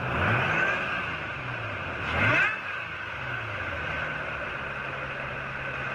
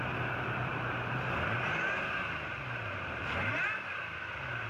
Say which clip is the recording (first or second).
first